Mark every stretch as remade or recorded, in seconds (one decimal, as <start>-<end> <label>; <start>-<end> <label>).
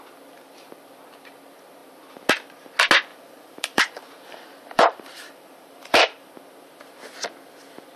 0.0-3.1 recorded; 3.1-6.3 remade; 6.3-8.0 recorded